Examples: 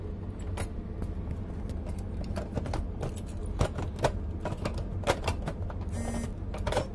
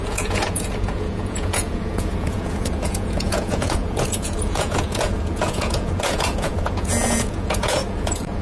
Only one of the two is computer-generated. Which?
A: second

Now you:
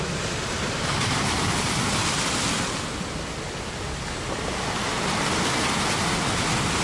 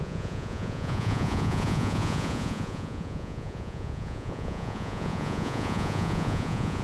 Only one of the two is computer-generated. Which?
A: second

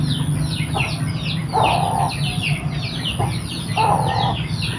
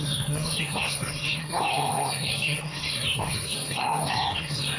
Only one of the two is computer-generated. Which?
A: second